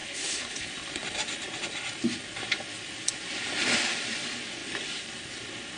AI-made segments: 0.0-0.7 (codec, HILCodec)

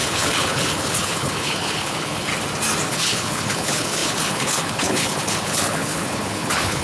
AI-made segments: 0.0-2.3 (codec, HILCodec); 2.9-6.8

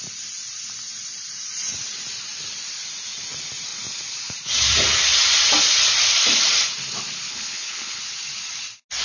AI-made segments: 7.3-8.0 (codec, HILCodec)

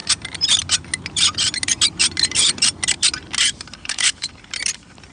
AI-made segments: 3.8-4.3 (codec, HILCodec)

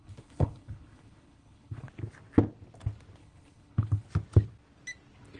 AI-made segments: 0.0-1.9 (codec, HILCodec); 3.2-4.1

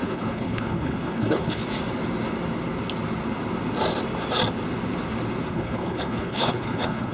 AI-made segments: 0.0-1.6 (codec, HILCodec); 5.5-7.1